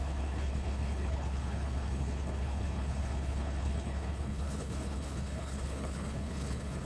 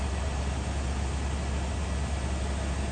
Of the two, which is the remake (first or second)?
first